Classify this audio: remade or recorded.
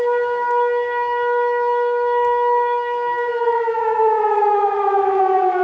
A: remade